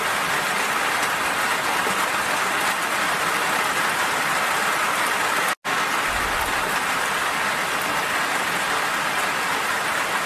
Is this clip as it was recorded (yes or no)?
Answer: yes